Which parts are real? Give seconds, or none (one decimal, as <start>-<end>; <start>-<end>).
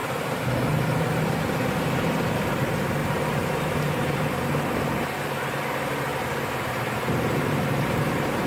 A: 0.5-3.0; 4.3-6.1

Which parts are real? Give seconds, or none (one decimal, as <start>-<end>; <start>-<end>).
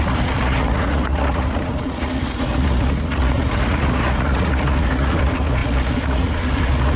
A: none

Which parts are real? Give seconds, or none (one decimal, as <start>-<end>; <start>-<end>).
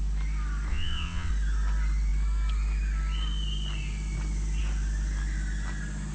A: 0.0-0.7; 1.3-6.1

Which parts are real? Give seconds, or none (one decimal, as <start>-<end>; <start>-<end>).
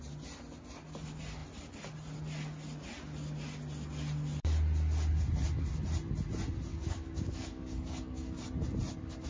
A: 0.0-6.7; 8.4-9.3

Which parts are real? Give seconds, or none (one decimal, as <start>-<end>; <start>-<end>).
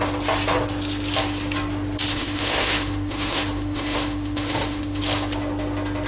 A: 0.0-2.1; 5.0-6.1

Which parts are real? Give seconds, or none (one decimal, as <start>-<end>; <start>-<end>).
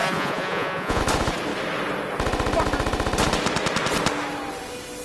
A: 1.0-5.0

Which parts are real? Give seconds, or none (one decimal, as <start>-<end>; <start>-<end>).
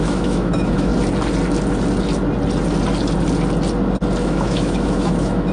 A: 0.9-4.2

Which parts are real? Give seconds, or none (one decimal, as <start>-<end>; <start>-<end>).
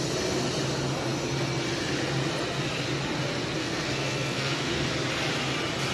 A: 0.0-3.6; 4.9-5.9